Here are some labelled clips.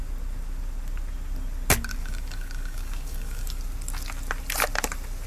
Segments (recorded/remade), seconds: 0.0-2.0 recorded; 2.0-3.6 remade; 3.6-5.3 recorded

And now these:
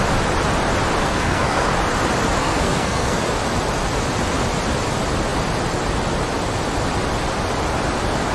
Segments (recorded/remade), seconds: 0.0-1.0 recorded; 1.0-1.7 remade; 1.7-2.4 recorded; 2.4-3.2 remade; 3.2-8.3 recorded

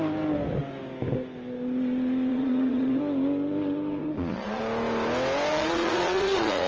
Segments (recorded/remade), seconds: 0.0-2.3 recorded; 2.3-3.0 remade; 3.0-4.0 recorded; 4.0-4.6 remade; 4.6-5.5 recorded; 5.5-6.7 remade